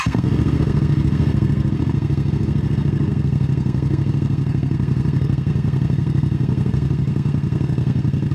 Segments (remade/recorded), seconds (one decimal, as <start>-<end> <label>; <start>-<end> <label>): 0.0-8.3 remade